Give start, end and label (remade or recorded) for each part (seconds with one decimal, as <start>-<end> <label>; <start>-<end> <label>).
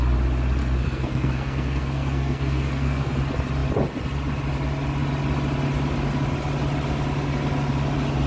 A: 0.0-0.6 recorded; 0.6-3.2 remade; 3.2-8.3 recorded